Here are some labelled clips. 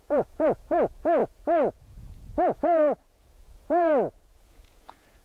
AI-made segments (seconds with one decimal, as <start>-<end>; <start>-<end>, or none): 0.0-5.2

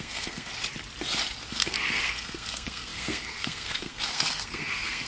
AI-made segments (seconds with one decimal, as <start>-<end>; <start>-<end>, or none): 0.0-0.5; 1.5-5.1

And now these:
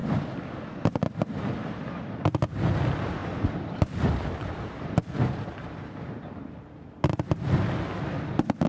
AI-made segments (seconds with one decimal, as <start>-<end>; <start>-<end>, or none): none